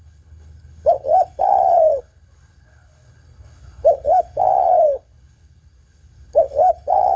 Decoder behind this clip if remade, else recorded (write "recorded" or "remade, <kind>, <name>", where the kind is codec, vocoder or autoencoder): remade, codec, HILCodec